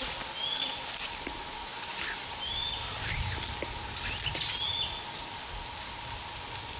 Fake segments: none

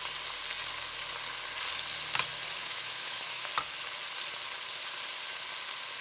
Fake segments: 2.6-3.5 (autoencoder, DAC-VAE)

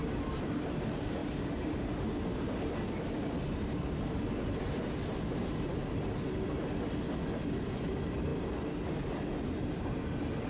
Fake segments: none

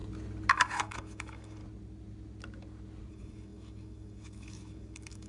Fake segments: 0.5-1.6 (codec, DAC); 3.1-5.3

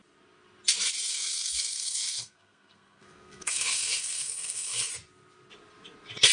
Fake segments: 1.1-4.9 (codec, SNAC)

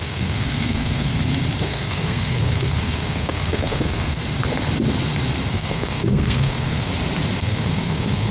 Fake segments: 0.0-1.1 (codec, SNAC); 1.6-4.2; 5.5-6.9; 7.4-8.3

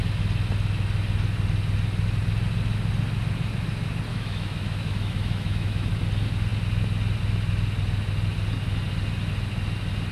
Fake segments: 4.1-5.9 (autoencoder, DAC-VAE)